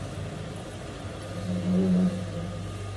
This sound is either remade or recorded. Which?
recorded